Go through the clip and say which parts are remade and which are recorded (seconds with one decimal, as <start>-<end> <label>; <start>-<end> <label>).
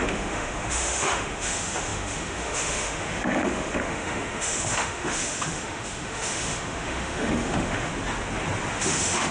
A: 0.0-7.9 remade; 7.9-8.7 recorded; 8.7-9.3 remade